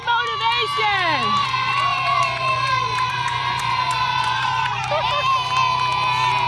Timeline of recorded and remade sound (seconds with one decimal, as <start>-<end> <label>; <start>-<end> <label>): 0.0-1.4 recorded; 1.4-4.8 remade; 4.8-6.5 recorded